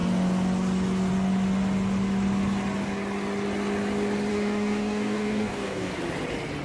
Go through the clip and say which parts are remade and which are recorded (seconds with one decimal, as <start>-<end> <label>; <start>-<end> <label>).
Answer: 0.0-4.3 recorded; 4.3-5.9 remade; 5.9-6.6 recorded